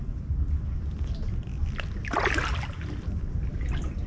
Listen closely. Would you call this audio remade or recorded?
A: recorded